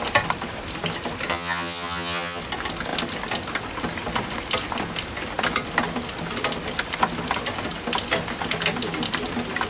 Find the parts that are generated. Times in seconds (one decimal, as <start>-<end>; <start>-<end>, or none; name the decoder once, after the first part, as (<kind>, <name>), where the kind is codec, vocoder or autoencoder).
1.3-2.4 (vocoder, HiFi-GAN)

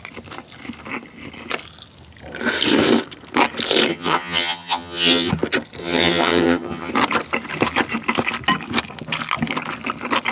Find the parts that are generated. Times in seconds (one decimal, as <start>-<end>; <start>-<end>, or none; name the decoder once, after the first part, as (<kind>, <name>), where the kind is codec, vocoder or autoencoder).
3.9-5.3 (vocoder, HiFi-GAN); 5.8-6.9

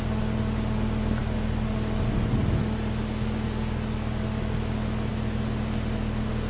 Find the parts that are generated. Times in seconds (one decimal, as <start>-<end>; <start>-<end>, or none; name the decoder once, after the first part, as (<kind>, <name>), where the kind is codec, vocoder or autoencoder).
none

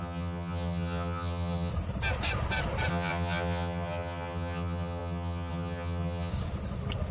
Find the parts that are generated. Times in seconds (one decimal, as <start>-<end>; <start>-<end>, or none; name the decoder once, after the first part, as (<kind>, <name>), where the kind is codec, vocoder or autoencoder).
0.0-1.7 (vocoder, HiFi-GAN); 2.9-6.3

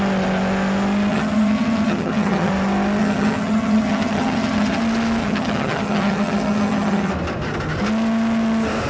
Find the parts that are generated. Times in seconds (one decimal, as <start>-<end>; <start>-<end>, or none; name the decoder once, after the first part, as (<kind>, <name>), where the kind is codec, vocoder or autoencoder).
1.1-2.5 (vocoder, HiFi-GAN); 3.0-4.8; 5.2-7.1

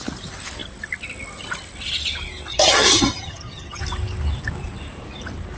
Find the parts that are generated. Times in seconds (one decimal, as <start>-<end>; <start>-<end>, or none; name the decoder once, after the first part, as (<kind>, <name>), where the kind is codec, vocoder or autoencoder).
2.5-3.8 (vocoder, HiFi-GAN)